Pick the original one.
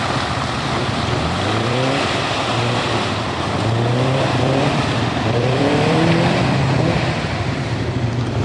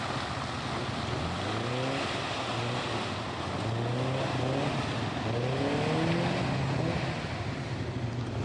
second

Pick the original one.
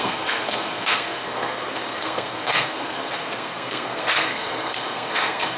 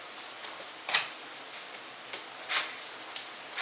second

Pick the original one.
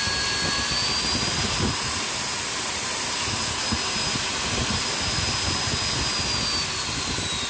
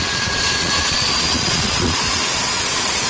first